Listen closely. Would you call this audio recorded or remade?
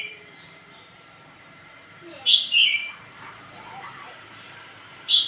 remade